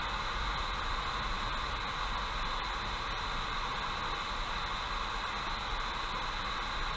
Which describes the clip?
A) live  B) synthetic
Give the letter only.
A